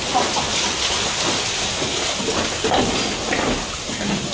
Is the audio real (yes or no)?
yes